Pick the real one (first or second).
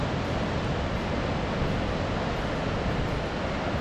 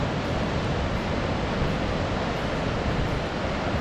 first